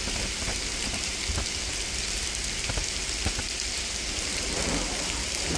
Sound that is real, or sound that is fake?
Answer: real